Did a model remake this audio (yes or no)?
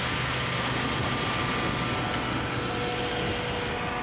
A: no